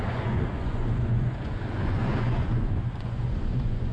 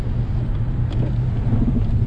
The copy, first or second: first